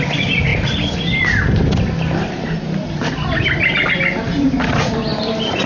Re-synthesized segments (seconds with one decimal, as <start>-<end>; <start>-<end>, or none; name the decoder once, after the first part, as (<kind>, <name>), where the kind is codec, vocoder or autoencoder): none